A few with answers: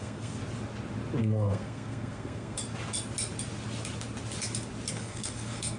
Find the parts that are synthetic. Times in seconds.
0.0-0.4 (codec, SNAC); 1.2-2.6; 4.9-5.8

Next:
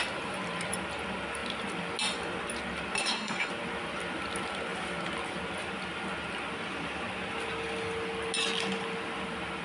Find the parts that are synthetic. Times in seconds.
3.0-3.5 (codec, SNAC)

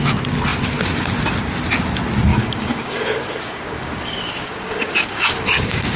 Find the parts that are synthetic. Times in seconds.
2.3-6.0 (codec, DAC)

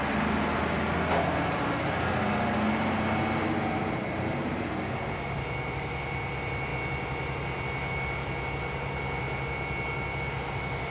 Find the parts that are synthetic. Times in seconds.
none

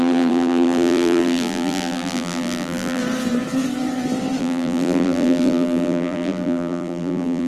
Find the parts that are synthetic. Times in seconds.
0.0-3.0 (vocoder, BigVGAN v2); 4.4-7.5

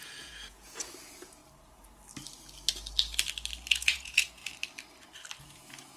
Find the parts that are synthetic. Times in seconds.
0.0-1.4 (vocoder, Vocos); 3.7-4.4; 5.4-6.0

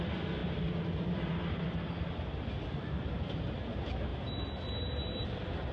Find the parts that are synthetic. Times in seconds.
none

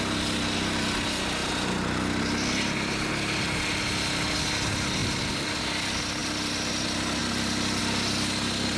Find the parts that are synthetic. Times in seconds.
6.2-6.7 (vocoder, BigVGAN v2)